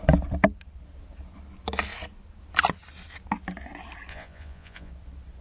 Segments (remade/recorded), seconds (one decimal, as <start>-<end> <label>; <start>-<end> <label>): 0.0-4.1 recorded; 4.1-4.9 remade; 4.9-5.4 recorded